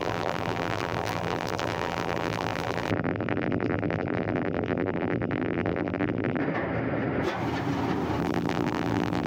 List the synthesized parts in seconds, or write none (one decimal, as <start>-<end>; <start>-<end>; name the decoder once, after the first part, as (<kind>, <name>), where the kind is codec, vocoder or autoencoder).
0.0-6.4 (vocoder, BigVGAN v2); 8.2-9.3